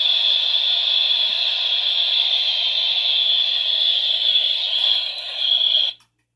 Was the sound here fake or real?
real